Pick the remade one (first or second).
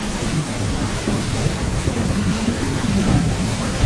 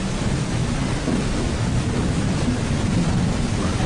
first